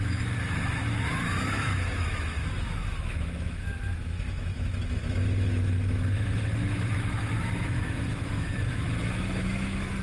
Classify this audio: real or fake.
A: fake